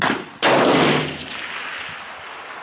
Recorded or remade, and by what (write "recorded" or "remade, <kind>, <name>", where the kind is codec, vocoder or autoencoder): recorded